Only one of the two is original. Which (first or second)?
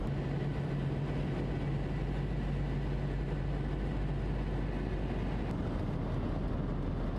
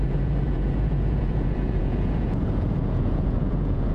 first